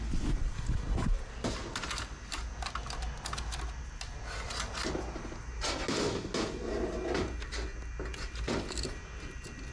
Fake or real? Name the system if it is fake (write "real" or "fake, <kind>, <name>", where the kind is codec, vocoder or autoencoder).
real